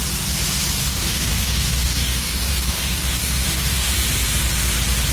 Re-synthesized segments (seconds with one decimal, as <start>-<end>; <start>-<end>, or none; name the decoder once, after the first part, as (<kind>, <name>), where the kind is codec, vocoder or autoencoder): 0.8-3.9 (codec, DAC)